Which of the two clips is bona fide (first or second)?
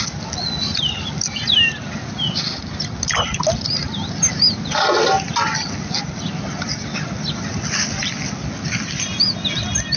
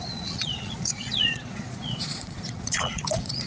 first